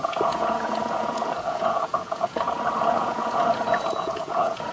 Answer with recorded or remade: remade